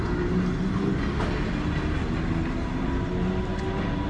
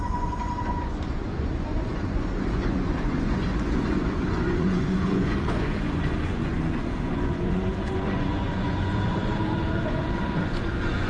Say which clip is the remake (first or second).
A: second